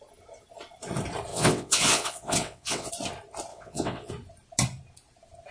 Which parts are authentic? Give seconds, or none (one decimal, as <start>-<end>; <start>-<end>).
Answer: 0.0-1.3; 2.9-3.5; 4.1-5.5